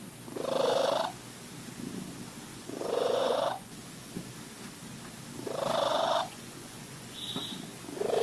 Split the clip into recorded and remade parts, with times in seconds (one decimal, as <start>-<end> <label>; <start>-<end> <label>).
0.0-2.5 recorded; 2.5-4.1 remade; 4.1-5.9 recorded; 5.9-7.2 remade; 7.2-8.2 recorded